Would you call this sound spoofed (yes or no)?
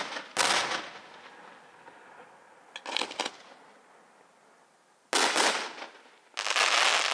no